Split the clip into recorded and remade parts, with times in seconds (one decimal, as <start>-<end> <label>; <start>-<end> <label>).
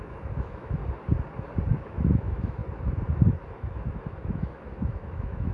0.0-0.8 remade; 0.8-1.7 recorded; 1.7-2.6 remade; 2.6-3.5 recorded; 3.5-5.5 remade